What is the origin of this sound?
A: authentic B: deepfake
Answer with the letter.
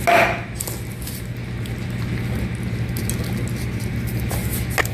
A